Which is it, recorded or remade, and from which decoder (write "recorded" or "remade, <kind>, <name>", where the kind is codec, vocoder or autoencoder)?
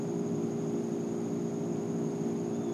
recorded